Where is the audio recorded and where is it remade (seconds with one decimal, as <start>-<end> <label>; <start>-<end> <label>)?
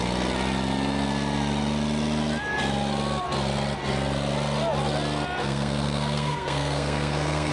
0.0-5.4 recorded; 5.4-7.5 remade